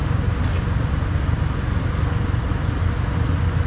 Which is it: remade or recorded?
recorded